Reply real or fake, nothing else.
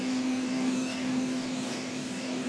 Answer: fake